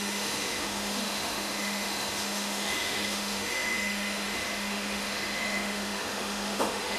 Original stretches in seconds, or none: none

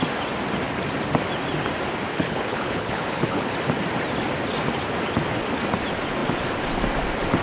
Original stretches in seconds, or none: 0.0-2.1; 3.5-7.4

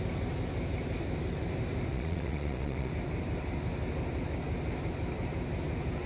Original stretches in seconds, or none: 0.0-1.9; 2.9-6.1

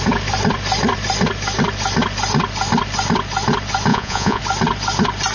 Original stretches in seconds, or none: 0.0-3.9; 4.4-5.3

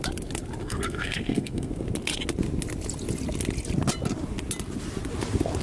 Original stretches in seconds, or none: 0.0-0.6; 1.7-5.6

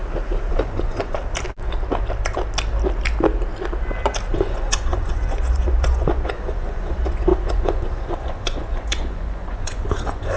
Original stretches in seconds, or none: 0.0-0.5; 1.2-4.3